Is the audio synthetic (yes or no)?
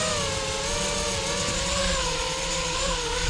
no